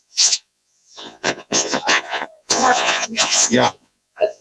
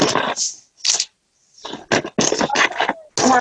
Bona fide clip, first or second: second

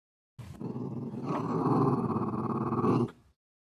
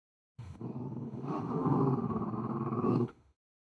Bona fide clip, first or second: first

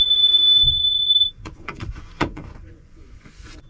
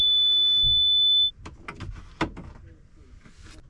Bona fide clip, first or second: second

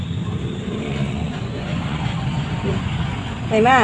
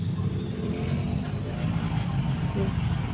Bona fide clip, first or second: second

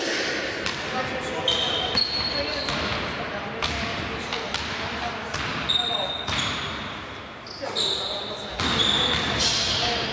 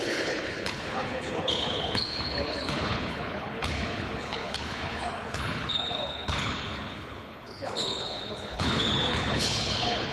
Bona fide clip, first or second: first